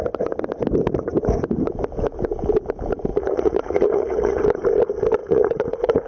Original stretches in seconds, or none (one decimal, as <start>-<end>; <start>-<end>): 0.0-3.1; 4.4-5.2